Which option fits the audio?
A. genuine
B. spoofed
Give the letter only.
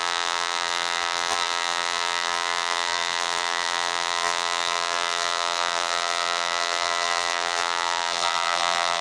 B